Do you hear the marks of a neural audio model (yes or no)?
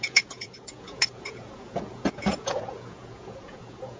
yes